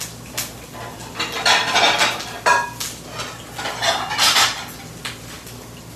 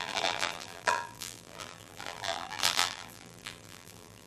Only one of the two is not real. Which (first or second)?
second